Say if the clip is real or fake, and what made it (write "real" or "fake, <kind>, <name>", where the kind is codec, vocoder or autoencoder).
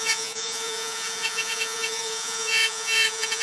fake, vocoder, Vocos